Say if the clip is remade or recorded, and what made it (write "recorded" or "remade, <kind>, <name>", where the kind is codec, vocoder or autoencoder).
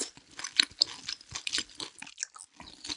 recorded